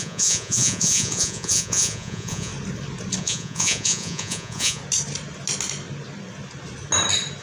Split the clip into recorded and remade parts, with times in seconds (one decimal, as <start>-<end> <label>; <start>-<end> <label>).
0.0-2.5 remade; 2.5-3.2 recorded; 3.2-4.8 remade; 4.8-7.4 recorded